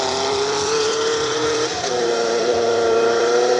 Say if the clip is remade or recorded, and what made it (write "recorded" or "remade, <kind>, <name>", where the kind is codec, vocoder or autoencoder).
remade, vocoder, BigVGAN v2